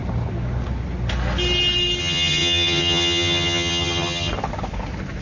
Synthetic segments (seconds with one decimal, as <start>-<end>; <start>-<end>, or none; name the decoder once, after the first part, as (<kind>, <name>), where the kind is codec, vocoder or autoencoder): 2.0-4.3 (vocoder, HiFi-GAN)